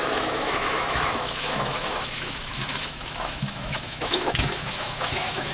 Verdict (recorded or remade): remade